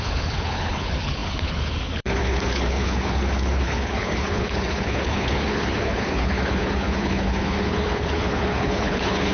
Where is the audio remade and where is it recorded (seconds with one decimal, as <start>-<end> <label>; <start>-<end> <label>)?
0.0-9.3 remade